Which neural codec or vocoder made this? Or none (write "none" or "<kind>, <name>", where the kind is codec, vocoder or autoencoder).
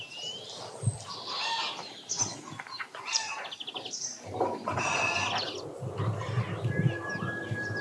none